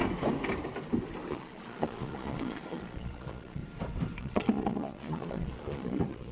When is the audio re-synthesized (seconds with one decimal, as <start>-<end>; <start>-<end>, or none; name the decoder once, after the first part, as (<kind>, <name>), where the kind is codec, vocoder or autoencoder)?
1.3-3.6 (vocoder, Vocos); 4.2-6.3